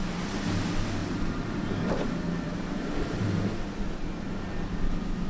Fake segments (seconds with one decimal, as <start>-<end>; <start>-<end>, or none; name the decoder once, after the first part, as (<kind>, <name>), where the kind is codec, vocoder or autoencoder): 1.0-3.5 (vocoder, BigVGAN v2)